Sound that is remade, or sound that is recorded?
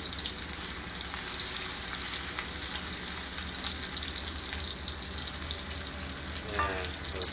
recorded